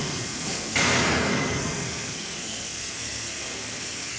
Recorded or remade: remade